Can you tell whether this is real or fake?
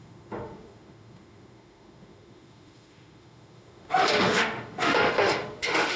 fake